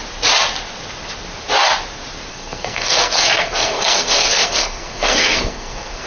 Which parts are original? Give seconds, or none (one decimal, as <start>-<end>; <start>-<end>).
0.0-2.3